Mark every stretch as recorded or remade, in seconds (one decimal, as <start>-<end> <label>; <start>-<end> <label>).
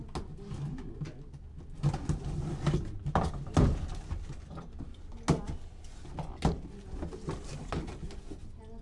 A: 0.0-8.8 recorded